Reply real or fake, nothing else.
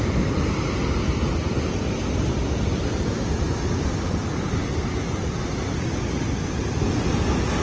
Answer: real